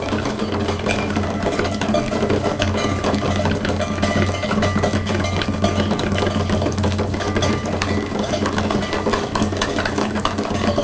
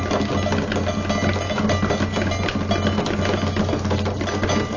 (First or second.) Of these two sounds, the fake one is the first